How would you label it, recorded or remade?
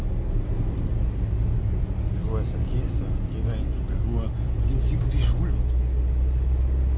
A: recorded